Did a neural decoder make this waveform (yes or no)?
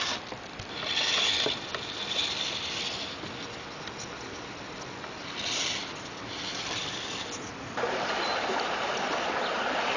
no